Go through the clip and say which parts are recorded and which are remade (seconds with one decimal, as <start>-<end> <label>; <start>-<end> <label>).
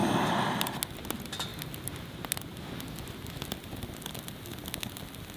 0.0-5.4 recorded